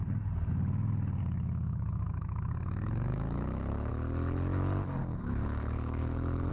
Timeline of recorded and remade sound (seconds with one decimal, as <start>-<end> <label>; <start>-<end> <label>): 0.0-1.2 recorded; 1.2-3.9 remade; 3.9-5.0 recorded; 5.0-6.5 remade